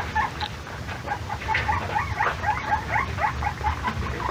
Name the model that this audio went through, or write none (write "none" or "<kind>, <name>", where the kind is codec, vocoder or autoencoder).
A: none